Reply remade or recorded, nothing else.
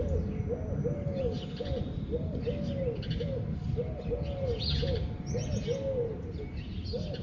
recorded